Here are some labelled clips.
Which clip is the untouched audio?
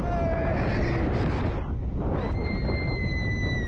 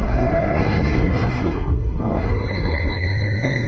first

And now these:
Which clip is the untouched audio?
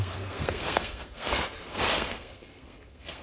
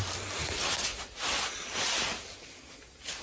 second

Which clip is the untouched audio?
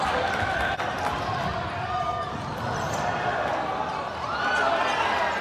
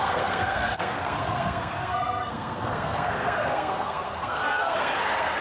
first